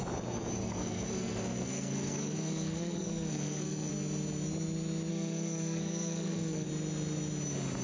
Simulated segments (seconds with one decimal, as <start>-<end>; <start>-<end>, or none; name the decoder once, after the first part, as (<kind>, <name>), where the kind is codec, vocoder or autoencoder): 0.6-3.9 (codec, SNAC); 5.1-6.7